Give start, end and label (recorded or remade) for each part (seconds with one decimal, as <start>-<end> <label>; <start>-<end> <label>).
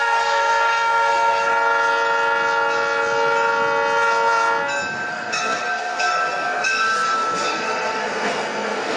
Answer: 0.0-1.5 remade; 1.5-5.1 recorded; 5.1-9.0 remade